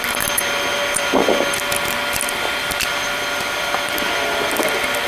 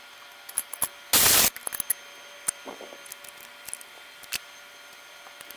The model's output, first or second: first